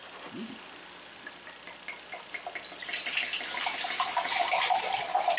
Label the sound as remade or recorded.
recorded